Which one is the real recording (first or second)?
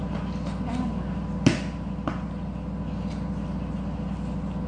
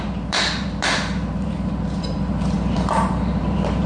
first